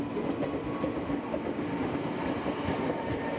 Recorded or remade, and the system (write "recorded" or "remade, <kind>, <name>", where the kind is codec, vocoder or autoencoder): recorded